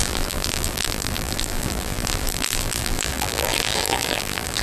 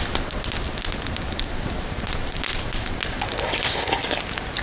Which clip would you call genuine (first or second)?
second